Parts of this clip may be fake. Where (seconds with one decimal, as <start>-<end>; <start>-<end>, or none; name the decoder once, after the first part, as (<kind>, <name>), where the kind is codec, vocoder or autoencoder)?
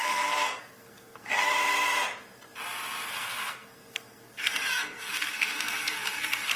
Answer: 0.0-1.5 (codec, SNAC); 3.1-6.6